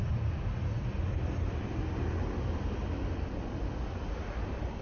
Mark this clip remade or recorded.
recorded